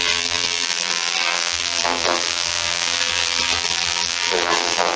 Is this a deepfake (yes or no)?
yes